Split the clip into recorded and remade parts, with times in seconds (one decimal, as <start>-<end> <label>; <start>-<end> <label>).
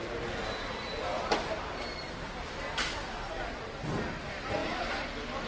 0.0-5.5 recorded